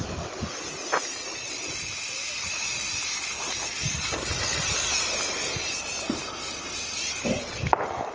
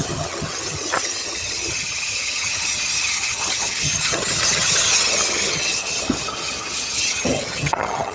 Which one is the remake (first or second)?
second